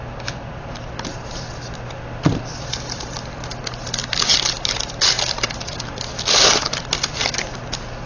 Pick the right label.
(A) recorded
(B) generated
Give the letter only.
A